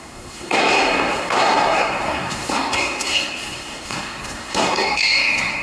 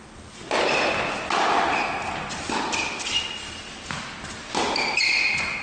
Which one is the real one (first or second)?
second